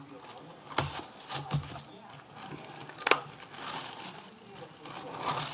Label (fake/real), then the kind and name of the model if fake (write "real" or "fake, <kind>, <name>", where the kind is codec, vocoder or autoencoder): real